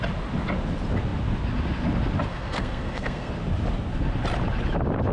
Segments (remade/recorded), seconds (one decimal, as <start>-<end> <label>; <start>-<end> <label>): 0.0-2.3 recorded; 2.3-3.3 remade; 3.3-5.1 recorded